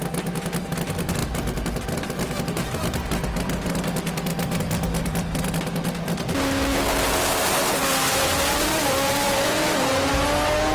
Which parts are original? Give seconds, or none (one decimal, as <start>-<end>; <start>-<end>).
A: 0.0-10.7